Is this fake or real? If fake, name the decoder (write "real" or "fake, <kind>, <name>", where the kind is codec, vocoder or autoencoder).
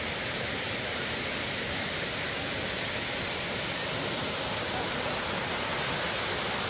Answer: real